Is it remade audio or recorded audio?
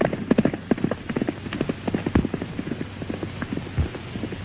recorded